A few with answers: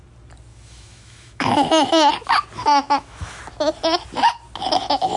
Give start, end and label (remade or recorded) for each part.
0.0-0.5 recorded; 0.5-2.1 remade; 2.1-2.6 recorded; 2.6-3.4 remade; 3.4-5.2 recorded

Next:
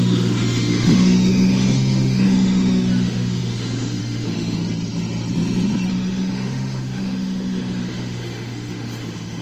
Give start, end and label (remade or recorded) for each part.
0.0-4.6 remade; 4.6-5.9 recorded; 5.9-9.4 remade

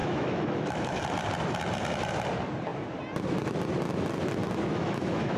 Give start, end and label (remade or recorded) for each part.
0.0-1.0 remade; 1.0-4.7 recorded; 4.7-5.4 remade

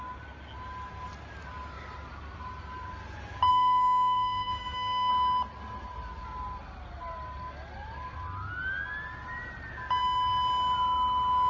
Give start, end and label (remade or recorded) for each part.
0.0-3.5 recorded; 3.5-5.1 remade; 5.1-11.5 recorded

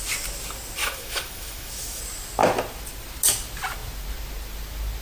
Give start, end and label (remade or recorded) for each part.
0.0-0.8 recorded; 0.8-2.0 remade; 2.0-5.0 recorded